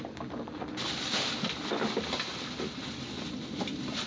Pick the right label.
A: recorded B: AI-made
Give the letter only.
A